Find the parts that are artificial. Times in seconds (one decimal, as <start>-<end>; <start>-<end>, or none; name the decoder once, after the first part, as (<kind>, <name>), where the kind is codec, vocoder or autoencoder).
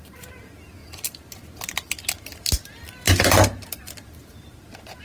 none